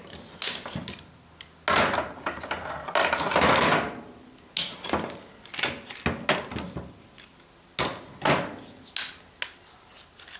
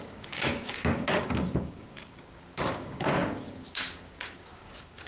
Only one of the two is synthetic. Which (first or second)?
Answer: second